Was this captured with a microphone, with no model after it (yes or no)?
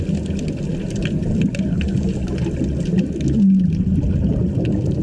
yes